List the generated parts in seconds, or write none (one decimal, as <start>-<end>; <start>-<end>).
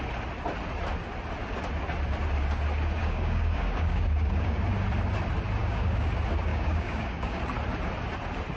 3.0-4.6; 5.6-6.1; 6.5-7.4